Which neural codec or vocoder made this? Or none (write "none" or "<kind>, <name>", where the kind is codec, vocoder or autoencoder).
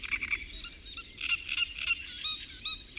none